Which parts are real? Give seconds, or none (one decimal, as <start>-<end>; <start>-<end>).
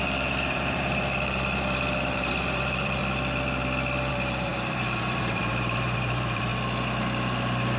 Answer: 3.0-4.1; 6.5-7.8